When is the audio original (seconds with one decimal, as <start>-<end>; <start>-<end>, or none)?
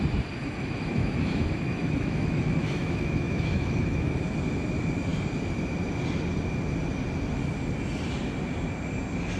0.0-0.4; 4.1-9.4